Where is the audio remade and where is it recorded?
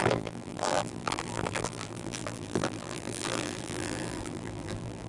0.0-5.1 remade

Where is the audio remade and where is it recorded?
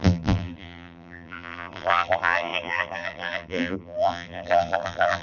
0.0-5.2 remade